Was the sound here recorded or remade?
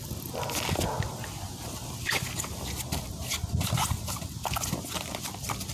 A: remade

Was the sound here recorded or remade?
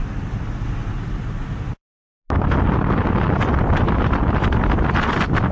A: recorded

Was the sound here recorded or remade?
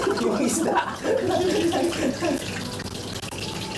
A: recorded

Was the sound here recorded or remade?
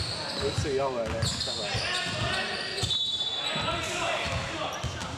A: recorded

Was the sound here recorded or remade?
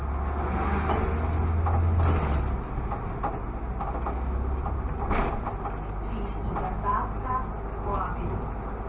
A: recorded